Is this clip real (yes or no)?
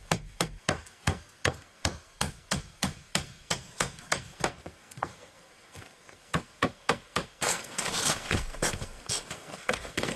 no